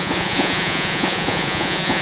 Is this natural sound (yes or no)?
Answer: no